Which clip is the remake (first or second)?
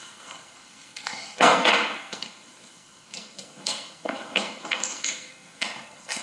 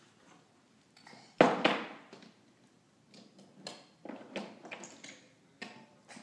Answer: first